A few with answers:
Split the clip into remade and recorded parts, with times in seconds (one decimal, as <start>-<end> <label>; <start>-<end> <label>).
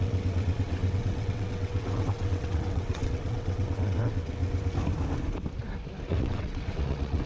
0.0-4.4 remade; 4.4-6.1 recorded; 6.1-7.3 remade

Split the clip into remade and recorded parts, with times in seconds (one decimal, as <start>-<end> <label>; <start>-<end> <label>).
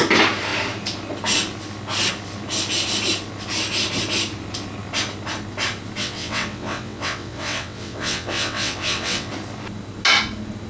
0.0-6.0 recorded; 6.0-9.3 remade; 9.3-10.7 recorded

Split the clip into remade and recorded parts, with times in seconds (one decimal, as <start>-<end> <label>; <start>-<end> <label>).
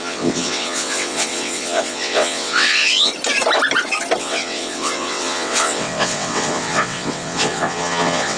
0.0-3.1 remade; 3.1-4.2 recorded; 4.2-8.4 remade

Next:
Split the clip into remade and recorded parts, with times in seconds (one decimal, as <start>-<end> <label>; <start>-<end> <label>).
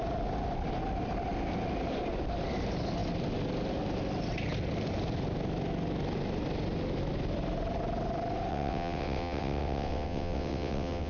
0.0-8.5 recorded; 8.5-11.1 remade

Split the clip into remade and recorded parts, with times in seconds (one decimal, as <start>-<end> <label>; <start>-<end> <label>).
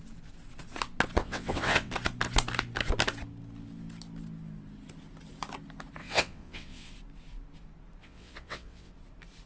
0.0-1.2 recorded; 1.2-1.9 remade; 1.9-6.0 recorded; 6.0-6.9 remade; 6.9-8.0 recorded; 8.0-8.9 remade; 8.9-9.5 recorded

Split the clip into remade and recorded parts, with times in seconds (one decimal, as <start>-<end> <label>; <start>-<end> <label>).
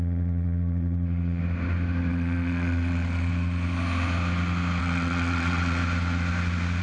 0.0-1.4 remade; 1.4-2.1 recorded; 2.1-3.3 remade; 3.3-4.8 recorded; 4.8-5.8 remade; 5.8-6.8 recorded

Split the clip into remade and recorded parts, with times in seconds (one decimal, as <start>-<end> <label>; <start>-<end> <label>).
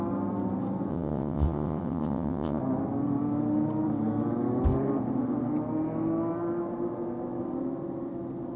0.0-0.9 recorded; 0.9-2.6 remade; 2.6-8.6 recorded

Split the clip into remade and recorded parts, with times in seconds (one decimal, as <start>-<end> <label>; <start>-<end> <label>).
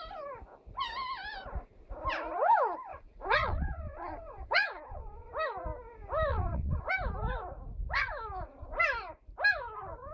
0.0-2.9 recorded; 2.9-5.3 remade; 5.3-6.3 recorded; 6.3-6.9 remade; 6.9-10.1 recorded